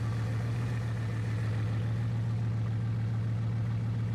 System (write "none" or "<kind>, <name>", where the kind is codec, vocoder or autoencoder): none